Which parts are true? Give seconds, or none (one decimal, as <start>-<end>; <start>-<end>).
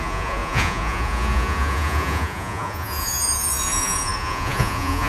none